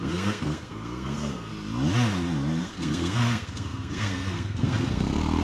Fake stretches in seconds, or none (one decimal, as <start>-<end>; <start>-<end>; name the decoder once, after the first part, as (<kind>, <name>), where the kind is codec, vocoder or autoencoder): 0.0-1.5 (codec, SNAC); 2.6-5.4